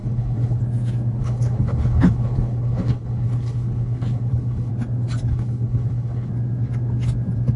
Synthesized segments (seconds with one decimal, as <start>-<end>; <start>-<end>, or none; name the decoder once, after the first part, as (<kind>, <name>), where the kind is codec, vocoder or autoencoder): 0.0-0.6 (codec, HILCodec); 1.2-4.7; 5.3-6.3

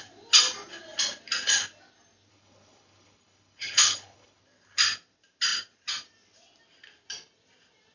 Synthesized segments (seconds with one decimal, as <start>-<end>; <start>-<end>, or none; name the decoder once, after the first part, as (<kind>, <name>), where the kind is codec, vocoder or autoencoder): 2.3-4.4 (codec, HILCodec)

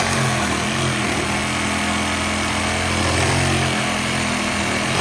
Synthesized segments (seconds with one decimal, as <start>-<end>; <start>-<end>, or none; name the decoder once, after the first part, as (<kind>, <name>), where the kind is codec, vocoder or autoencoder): none

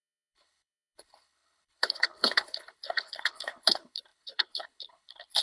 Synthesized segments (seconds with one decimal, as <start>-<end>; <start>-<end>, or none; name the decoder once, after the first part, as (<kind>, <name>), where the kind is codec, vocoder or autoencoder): 0.0-5.4 (codec, HILCodec)

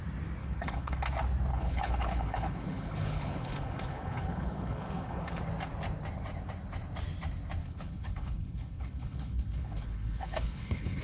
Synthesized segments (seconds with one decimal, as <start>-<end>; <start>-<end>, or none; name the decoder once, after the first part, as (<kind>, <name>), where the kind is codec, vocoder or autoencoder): 0.4-1.0 (codec, HILCodec); 1.5-5.4; 7.6-11.0

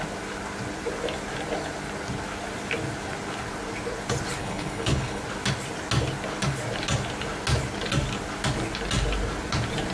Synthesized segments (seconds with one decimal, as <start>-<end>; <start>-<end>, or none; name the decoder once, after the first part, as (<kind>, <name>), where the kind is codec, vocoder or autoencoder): 4.4-5.2 (codec, HILCodec)

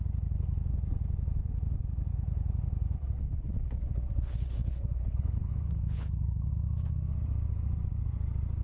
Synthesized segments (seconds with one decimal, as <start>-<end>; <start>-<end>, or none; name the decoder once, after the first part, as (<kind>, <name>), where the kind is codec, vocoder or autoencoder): 2.1-4.0 (codec, HILCodec); 4.6-6.5